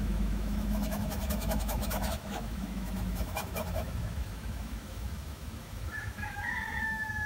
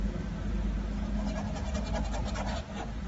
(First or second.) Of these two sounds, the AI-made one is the first